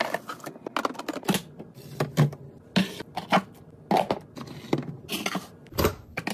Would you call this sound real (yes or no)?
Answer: yes